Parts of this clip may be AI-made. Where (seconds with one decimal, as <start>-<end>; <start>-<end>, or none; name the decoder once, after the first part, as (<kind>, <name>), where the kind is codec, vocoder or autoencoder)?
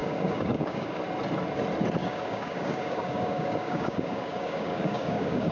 0.0-1.0 (codec, DAC); 2.0-5.5